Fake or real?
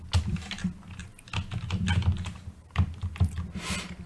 real